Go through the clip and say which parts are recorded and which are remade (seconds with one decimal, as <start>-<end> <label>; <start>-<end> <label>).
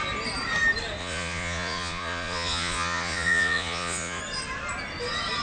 0.0-1.0 recorded; 1.0-4.2 remade; 4.2-5.4 recorded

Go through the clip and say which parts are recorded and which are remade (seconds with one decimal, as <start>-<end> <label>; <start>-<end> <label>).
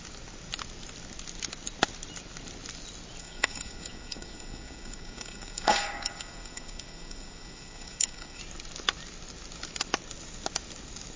0.0-3.2 recorded; 3.2-8.4 remade; 8.4-11.2 recorded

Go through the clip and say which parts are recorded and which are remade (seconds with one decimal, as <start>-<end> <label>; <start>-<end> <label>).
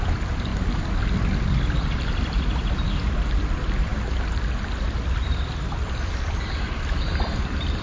0.0-7.8 remade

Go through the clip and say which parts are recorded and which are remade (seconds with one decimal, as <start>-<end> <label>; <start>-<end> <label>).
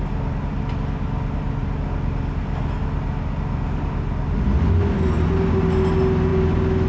0.0-6.9 recorded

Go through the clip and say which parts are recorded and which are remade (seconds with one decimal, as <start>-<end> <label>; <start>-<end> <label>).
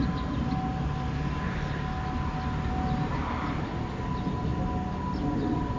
0.0-5.8 recorded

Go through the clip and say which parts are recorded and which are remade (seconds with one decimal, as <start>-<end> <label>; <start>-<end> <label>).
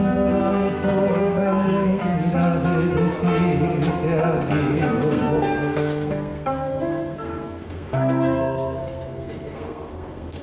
0.0-2.0 remade; 2.0-4.7 recorded; 4.7-10.4 remade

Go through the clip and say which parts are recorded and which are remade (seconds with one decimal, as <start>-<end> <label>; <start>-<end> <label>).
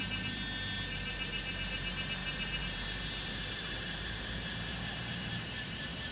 0.0-2.2 recorded; 2.2-6.1 remade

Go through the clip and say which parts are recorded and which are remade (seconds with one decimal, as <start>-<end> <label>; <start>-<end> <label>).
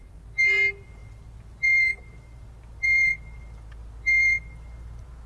0.0-5.3 recorded